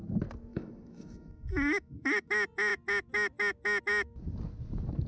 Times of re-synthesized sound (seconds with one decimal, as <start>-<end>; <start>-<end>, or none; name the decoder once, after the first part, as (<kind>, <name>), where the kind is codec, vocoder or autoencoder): 0.5-2.3 (autoencoder, DAC-VAE)